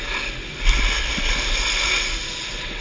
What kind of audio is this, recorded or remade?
recorded